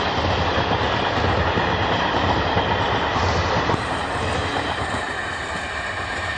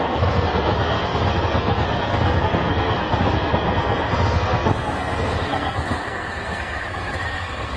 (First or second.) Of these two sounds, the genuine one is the first